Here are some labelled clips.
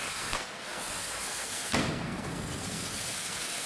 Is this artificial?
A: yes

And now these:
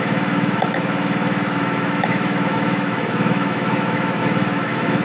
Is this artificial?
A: yes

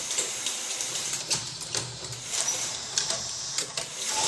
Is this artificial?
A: yes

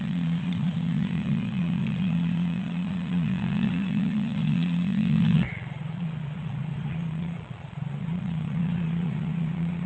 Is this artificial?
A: yes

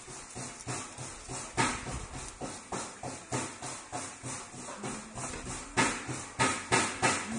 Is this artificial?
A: no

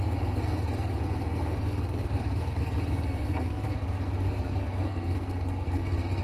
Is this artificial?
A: yes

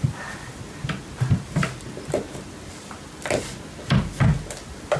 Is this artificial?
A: no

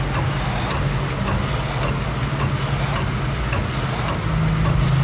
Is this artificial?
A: no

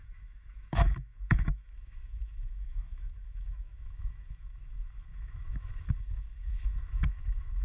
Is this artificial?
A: yes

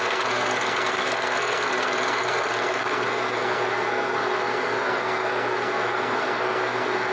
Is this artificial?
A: yes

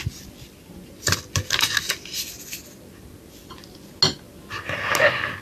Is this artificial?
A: no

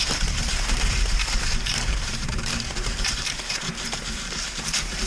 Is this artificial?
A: yes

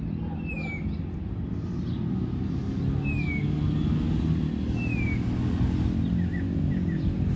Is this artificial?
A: no